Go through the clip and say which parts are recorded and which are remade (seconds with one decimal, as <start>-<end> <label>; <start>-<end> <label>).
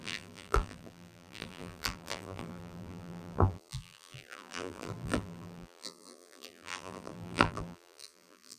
0.0-8.6 remade